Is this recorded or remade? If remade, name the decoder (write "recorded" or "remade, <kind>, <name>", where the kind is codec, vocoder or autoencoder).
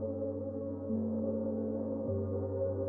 remade, codec, SNAC